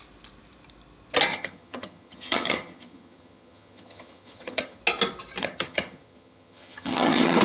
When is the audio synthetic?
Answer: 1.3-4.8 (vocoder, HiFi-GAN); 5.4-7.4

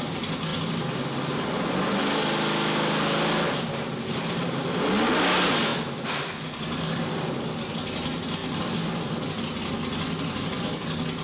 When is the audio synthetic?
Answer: none

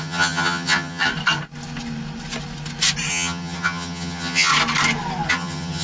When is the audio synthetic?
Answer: 0.0-1.1 (vocoder, HiFi-GAN); 3.1-4.5; 5.3-5.8

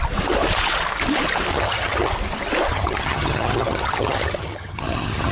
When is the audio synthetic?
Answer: 1.5-2.1 (vocoder, HiFi-GAN); 2.7-5.3

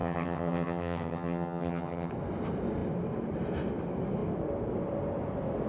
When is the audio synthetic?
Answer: 0.0-2.1 (vocoder, HiFi-GAN)